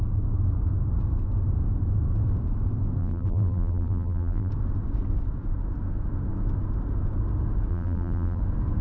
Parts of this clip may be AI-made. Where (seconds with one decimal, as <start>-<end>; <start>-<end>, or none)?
3.0-4.5; 7.7-8.4